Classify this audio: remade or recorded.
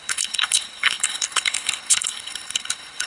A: remade